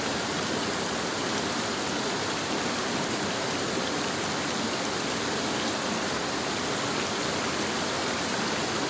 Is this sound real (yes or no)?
yes